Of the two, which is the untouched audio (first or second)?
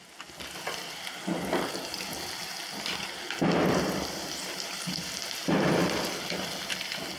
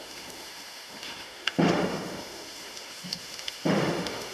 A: first